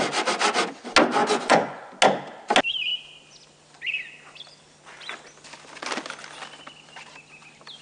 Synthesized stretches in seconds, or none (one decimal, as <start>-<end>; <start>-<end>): 1.2-1.9